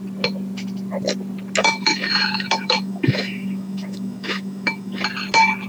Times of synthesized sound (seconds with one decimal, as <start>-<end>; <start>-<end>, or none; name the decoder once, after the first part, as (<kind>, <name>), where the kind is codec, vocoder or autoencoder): 1.6-5.0 (autoencoder, DAC-VAE)